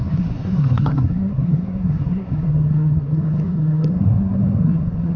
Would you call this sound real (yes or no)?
no